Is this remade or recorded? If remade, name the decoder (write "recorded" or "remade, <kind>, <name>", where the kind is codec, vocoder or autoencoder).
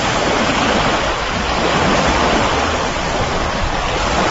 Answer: remade, vocoder, BigVGAN v2